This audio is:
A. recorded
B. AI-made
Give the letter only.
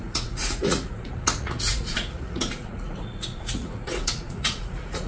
B